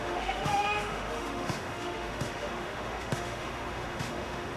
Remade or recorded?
remade